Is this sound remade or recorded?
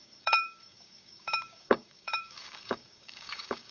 remade